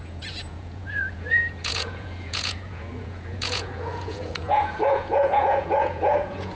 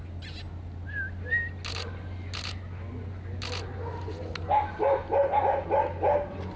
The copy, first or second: first